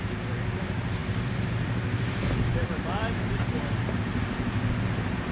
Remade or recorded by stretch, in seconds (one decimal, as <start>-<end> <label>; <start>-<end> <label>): 0.0-1.0 recorded; 1.0-4.2 remade; 4.2-5.3 recorded